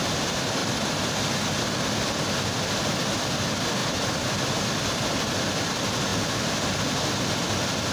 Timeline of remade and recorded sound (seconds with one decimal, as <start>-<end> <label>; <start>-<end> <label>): 0.0-0.6 remade; 0.6-3.2 recorded; 3.2-6.1 remade; 6.1-7.9 recorded